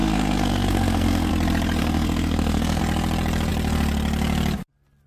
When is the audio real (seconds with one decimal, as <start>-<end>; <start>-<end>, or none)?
1.3-1.8; 2.8-5.1